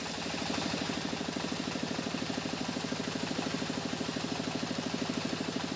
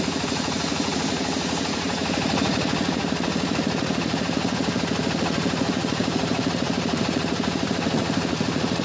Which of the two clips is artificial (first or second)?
second